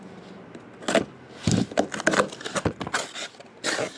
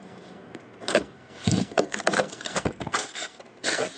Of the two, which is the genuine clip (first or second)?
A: first